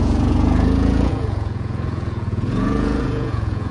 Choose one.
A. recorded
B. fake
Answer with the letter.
B